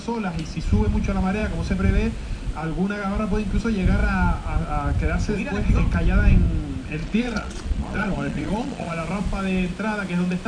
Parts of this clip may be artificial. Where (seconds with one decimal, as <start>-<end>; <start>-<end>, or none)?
7.0-8.9